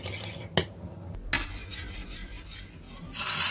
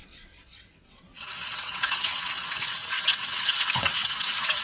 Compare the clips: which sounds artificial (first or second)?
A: second